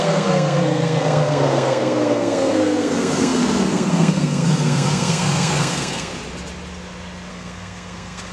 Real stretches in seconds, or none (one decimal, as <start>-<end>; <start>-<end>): 6.1-7.3